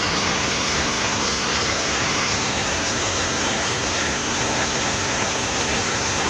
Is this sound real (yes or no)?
no